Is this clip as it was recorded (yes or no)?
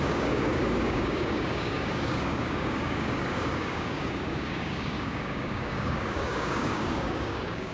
no